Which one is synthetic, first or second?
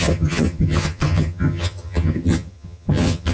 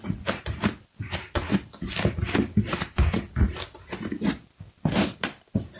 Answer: first